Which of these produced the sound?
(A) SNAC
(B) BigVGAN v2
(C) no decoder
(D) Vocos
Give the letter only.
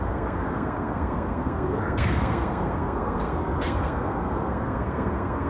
A